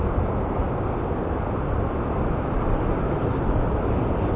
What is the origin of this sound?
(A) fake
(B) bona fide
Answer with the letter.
B